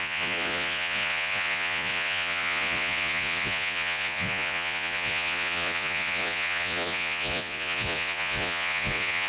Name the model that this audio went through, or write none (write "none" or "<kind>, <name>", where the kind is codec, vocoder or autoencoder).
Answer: vocoder, Vocos